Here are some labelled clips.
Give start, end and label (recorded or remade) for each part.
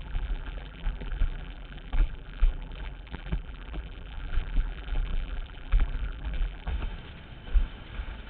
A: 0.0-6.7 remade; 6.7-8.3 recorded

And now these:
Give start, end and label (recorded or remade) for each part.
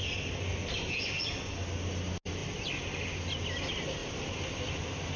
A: 0.0-4.0 recorded; 4.0-4.5 remade; 4.5-5.2 recorded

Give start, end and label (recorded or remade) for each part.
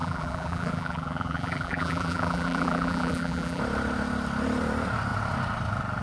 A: 0.0-3.6 remade; 3.6-6.0 recorded